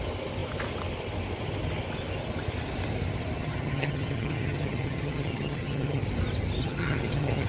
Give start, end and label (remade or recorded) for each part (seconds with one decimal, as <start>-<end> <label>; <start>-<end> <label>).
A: 0.0-3.4 recorded; 3.4-6.0 remade; 6.0-6.6 recorded; 6.6-7.5 remade